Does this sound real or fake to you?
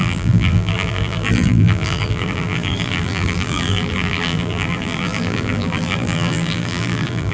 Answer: fake